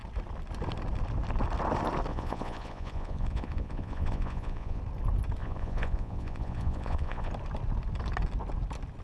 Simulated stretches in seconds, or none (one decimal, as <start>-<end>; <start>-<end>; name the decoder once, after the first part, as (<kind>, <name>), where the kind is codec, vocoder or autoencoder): 2.1-4.8 (vocoder, Vocos); 5.4-7.3